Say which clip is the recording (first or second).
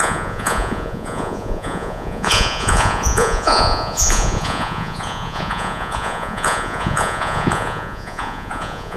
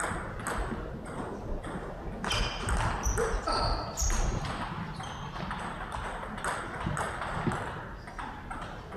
second